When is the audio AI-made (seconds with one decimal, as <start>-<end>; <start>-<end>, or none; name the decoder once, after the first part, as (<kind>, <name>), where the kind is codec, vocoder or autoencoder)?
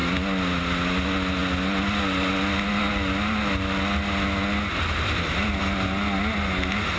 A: none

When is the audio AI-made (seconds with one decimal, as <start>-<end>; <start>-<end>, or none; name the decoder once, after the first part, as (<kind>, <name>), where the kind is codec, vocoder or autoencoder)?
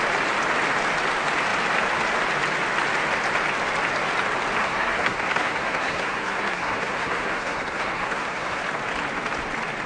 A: 4.6-8.6 (codec, SNAC)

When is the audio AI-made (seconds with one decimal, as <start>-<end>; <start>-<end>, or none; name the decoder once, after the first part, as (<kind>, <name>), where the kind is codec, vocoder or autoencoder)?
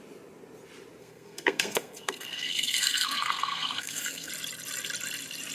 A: 1.0-4.3 (codec, SNAC)